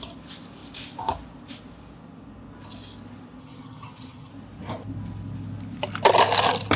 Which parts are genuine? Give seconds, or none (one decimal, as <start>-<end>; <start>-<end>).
0.0-3.4; 4.3-6.8